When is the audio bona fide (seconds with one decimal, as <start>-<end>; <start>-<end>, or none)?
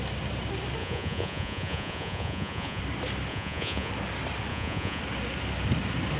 0.0-0.8; 2.8-3.3; 3.9-4.5; 5.0-6.2